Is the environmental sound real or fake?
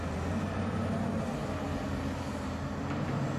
real